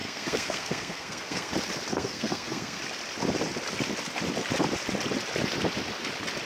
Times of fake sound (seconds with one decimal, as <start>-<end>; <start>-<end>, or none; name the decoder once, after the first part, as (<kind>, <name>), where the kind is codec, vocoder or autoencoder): 0.0-1.5 (codec, SNAC); 1.9-2.8